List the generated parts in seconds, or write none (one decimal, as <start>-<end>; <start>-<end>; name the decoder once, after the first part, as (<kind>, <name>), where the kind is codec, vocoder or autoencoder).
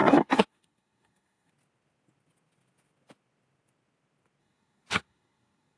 0.0-1.5 (codec, SNAC); 4.4-5.8